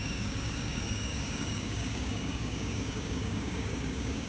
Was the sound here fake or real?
fake